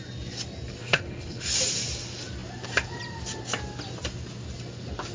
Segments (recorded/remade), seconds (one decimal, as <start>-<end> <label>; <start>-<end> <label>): 0.0-0.8 recorded; 0.8-1.4 remade; 1.4-5.1 recorded